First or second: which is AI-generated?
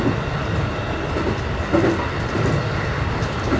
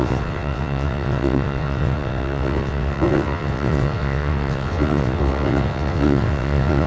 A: second